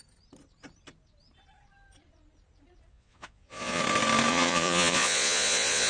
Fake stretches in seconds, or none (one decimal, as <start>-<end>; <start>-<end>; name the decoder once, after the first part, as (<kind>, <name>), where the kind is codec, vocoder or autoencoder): 2.9-3.8 (vocoder, Vocos); 4.3-5.9